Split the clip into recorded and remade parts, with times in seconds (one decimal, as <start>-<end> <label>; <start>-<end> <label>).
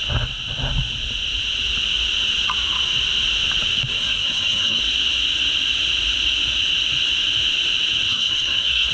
0.0-3.9 recorded; 3.9-4.8 remade; 4.8-8.1 recorded; 8.1-8.9 remade